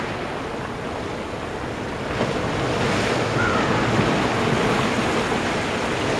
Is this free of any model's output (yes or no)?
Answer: yes